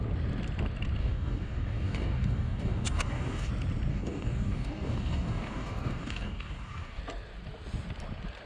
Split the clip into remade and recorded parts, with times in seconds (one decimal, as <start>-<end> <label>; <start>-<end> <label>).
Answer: 0.0-1.0 recorded; 1.0-3.5 remade; 3.5-3.9 recorded; 3.9-7.0 remade; 7.0-8.5 recorded